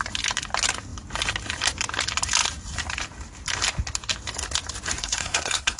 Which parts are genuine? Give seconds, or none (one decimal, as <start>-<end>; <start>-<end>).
0.0-5.0